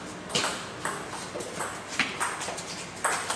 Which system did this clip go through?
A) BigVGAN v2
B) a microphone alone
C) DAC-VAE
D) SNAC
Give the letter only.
B